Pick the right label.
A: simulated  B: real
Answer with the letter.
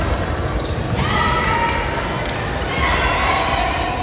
B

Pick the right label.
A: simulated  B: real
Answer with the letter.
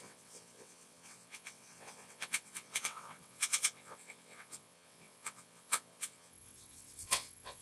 A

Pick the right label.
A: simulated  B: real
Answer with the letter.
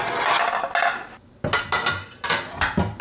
B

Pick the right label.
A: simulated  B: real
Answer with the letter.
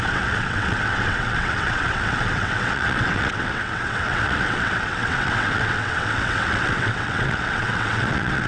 A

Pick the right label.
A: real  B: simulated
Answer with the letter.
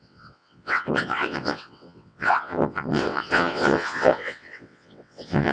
B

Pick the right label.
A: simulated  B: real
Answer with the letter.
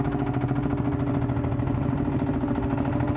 B